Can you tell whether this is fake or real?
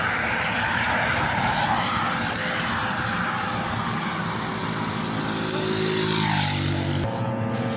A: real